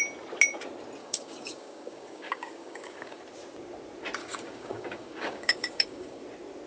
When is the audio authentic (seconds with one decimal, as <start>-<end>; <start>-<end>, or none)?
0.0-1.0; 3.2-4.2; 6.2-6.7